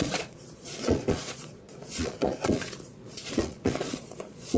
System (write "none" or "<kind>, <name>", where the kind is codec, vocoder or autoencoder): vocoder, Vocos